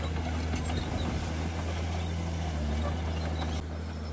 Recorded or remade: recorded